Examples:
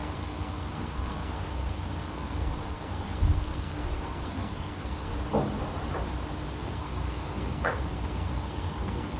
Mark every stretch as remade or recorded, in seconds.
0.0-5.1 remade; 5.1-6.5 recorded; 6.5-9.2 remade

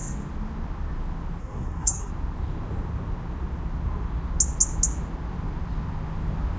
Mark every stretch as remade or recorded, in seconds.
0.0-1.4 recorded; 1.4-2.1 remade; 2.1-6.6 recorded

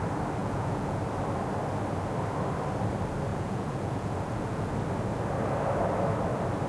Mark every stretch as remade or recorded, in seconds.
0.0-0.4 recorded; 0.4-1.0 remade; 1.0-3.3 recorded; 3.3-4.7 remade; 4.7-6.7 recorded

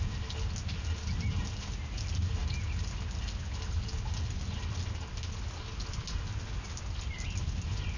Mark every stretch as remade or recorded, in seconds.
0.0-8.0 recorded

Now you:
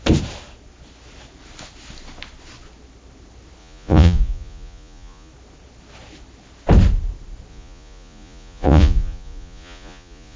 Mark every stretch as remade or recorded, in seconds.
0.0-3.6 recorded; 3.6-5.3 remade; 5.3-7.5 recorded; 7.5-10.4 remade